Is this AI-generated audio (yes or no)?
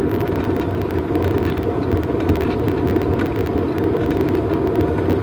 no